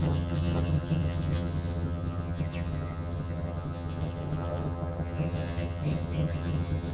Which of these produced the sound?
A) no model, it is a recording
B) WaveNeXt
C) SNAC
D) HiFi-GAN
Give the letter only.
D